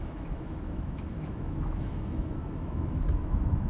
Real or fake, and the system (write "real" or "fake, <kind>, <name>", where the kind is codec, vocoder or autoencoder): fake, autoencoder, DAC-VAE